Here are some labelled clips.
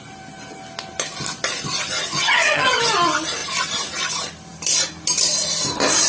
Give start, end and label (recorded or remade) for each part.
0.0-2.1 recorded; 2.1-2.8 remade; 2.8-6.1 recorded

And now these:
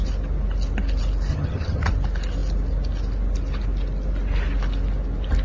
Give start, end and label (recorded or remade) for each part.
0.0-1.3 recorded; 1.3-1.9 remade; 1.9-5.4 recorded

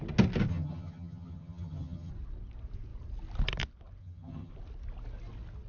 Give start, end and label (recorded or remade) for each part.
0.0-0.5 recorded; 0.5-2.1 remade; 2.1-4.0 recorded; 4.0-4.5 remade; 4.5-5.7 recorded